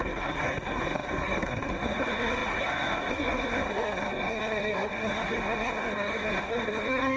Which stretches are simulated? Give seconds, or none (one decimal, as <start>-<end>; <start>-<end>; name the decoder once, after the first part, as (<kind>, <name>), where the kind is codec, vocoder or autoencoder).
0.0-7.2 (codec, SNAC)